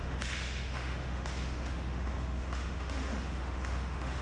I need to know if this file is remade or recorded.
remade